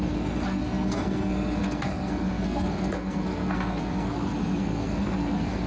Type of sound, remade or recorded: remade